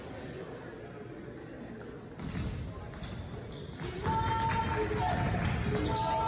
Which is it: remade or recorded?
recorded